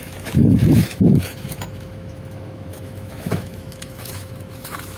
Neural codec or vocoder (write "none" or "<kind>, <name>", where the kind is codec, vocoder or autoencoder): autoencoder, DAC-VAE